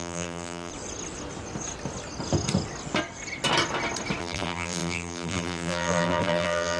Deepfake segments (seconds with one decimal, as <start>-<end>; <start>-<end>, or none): 0.0-0.7; 4.2-6.8